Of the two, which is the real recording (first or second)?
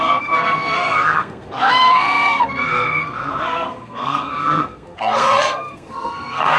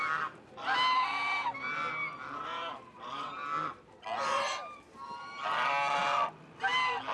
second